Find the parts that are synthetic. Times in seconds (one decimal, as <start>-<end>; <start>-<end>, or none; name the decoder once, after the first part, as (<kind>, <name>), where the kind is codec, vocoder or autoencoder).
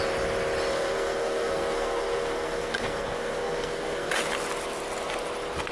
0.7-4.1 (codec, SNAC)